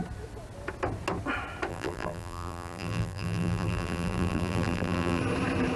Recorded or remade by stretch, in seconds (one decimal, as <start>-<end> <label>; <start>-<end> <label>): 0.0-1.7 recorded; 1.7-5.2 remade; 5.2-5.8 recorded

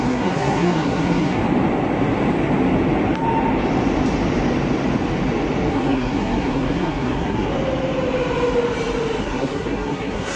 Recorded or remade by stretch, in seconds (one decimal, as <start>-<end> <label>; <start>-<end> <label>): 0.0-1.4 remade; 1.4-5.7 recorded; 5.7-7.5 remade; 7.5-9.2 recorded; 9.2-10.4 remade

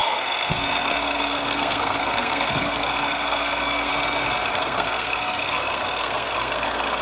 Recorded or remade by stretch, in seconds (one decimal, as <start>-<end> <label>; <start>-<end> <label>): 0.0-3.9 remade; 3.9-4.5 recorded; 4.5-7.0 remade

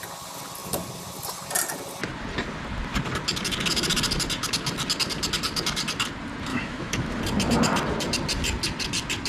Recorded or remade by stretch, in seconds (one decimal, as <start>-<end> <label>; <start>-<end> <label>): 0.0-6.5 recorded; 6.5-7.2 remade; 7.2-9.3 recorded

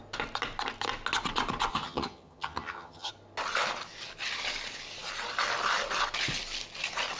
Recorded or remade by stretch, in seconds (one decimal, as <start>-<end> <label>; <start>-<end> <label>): 0.0-1.7 recorded; 1.7-3.1 remade; 3.1-7.2 recorded

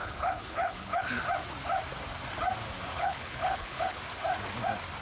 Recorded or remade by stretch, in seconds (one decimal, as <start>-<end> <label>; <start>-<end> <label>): 0.0-1.2 remade; 1.2-2.9 recorded; 2.9-4.0 remade; 4.0-5.0 recorded

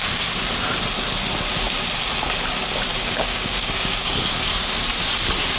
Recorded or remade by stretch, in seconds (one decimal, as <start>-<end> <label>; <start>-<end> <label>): 0.0-2.9 recorded; 2.9-4.1 remade; 4.1-5.6 recorded

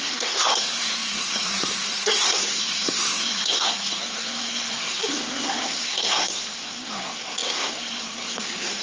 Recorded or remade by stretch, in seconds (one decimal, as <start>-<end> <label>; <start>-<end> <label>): 0.0-8.8 remade